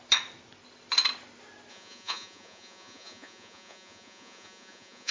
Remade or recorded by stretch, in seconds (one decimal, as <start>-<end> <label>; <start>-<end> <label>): 0.0-1.7 recorded; 1.7-5.1 remade